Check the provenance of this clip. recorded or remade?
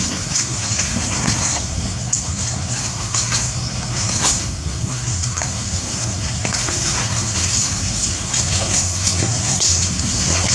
remade